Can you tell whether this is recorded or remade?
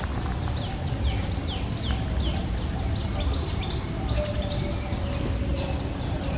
recorded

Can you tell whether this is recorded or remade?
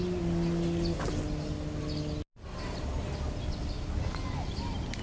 recorded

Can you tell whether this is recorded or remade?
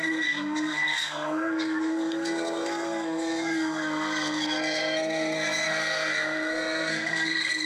remade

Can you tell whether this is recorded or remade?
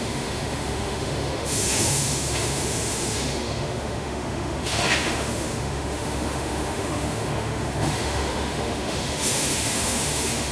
remade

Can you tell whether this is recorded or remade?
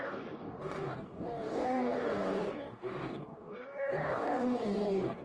remade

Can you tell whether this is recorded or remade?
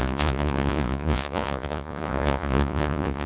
remade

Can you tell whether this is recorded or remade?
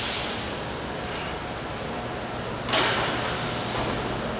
recorded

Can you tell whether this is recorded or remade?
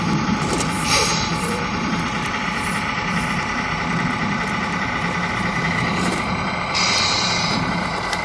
remade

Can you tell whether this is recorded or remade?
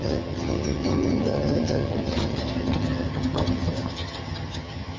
remade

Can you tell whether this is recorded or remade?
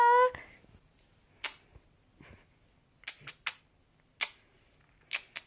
recorded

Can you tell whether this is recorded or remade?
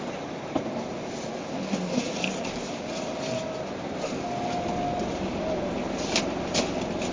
recorded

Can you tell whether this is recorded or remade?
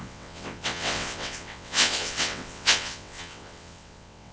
remade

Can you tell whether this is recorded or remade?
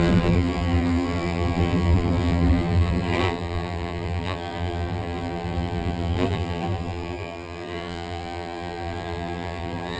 remade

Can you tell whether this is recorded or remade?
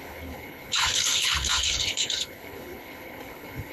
remade